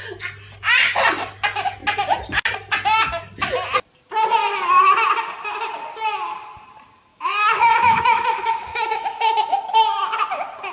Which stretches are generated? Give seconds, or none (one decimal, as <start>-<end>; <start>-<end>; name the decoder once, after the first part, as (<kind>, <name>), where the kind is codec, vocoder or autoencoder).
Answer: 7.1-9.6 (autoencoder, DAC-VAE)